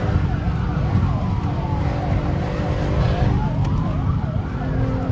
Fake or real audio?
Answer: real